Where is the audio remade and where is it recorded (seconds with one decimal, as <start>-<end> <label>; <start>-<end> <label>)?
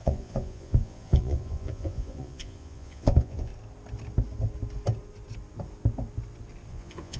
0.0-3.5 remade; 3.5-6.7 recorded; 6.7-7.2 remade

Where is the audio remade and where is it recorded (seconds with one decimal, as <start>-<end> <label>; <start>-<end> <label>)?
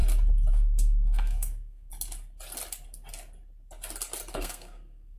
0.0-0.5 recorded; 0.5-1.9 remade; 1.9-4.3 recorded; 4.3-5.2 remade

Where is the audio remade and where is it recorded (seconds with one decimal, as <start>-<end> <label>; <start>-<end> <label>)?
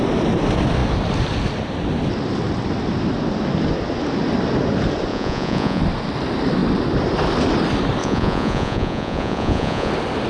0.0-5.1 recorded; 5.1-5.8 remade; 5.8-8.0 recorded; 8.0-9.9 remade; 9.9-10.3 recorded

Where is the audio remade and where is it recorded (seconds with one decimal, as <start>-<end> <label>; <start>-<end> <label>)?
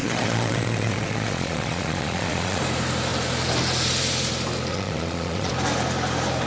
0.0-2.6 remade; 2.6-4.7 recorded; 4.7-5.5 remade; 5.5-6.5 recorded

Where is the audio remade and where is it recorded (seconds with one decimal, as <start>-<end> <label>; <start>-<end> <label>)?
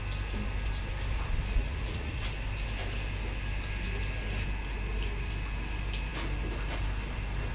0.0-1.6 recorded; 1.6-2.2 remade; 2.2-7.5 recorded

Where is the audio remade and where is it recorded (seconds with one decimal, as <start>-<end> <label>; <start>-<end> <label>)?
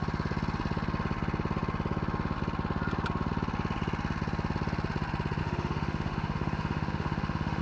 0.0-5.4 recorded; 5.4-7.6 remade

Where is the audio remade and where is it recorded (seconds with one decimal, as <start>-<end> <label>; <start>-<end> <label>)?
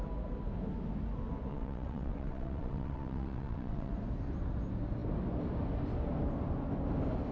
0.0-1.5 recorded; 1.5-3.9 remade; 3.9-7.3 recorded